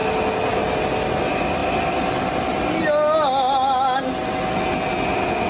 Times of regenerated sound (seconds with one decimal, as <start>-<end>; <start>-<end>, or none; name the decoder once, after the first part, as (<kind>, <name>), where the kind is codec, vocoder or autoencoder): none